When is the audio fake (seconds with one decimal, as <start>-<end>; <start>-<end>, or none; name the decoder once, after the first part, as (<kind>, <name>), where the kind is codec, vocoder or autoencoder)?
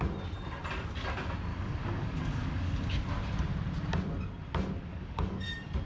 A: 1.5-2.9 (codec, DAC); 4.9-5.4